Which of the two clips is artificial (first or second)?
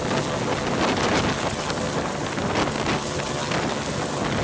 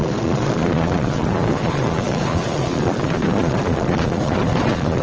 second